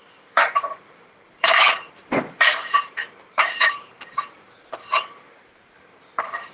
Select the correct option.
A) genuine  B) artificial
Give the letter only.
B